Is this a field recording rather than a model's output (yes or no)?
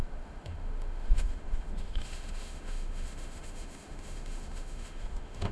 no